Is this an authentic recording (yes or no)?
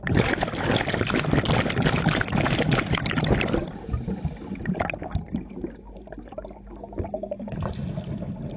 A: yes